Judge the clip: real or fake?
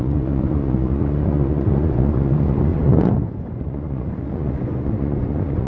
fake